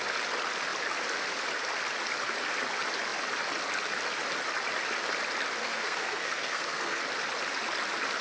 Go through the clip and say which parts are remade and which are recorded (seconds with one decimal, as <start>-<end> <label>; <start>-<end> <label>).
0.0-5.6 recorded; 5.6-7.0 remade; 7.0-8.2 recorded